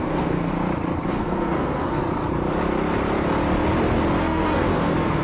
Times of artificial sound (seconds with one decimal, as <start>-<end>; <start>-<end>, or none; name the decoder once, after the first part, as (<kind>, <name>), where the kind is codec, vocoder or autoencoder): 0.0-0.5 (codec, SNAC); 1.1-2.0; 4.2-5.2